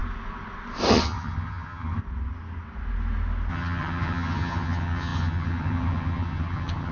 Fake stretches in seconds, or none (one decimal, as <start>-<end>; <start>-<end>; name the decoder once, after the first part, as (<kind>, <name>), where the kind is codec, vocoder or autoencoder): 0.9-2.0 (vocoder, HiFi-GAN); 3.5-6.9